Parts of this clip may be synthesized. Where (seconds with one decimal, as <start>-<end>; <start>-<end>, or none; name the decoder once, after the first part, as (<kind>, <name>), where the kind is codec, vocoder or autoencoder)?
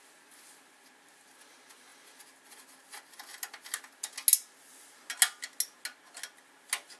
none